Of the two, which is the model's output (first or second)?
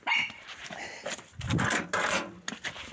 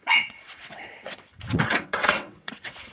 second